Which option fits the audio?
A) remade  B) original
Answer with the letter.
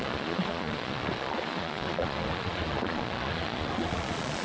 A